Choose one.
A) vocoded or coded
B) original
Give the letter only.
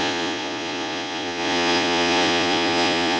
A